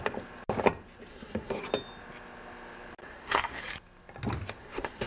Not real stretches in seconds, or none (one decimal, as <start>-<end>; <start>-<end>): 1.1-1.6; 3.0-3.6; 4.6-5.1